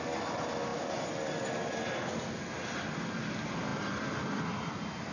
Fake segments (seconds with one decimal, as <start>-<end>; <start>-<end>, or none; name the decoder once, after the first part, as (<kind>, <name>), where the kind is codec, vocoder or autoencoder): none